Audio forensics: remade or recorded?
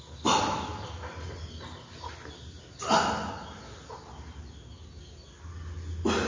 recorded